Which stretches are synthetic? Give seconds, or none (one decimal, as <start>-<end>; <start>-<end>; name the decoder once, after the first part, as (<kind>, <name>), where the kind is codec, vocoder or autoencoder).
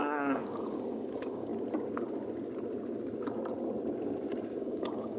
0.0-1.5 (codec, DAC); 4.6-5.2